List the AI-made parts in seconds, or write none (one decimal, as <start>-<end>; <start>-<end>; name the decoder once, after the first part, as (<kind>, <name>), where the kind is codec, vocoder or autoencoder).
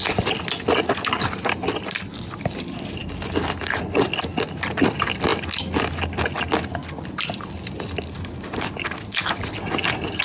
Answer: none